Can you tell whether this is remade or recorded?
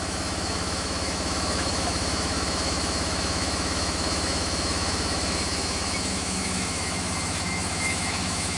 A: remade